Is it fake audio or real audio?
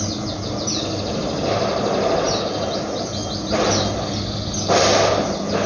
real